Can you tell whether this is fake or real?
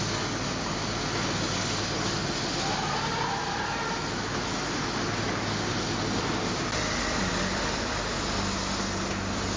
real